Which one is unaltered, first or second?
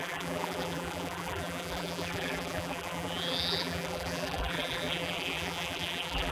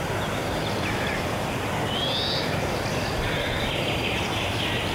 second